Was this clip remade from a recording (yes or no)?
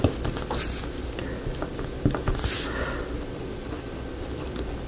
no